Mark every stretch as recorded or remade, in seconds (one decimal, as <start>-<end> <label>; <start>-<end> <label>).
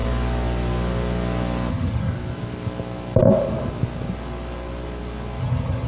0.0-1.7 recorded; 1.7-2.1 remade; 2.1-5.4 recorded; 5.4-5.9 remade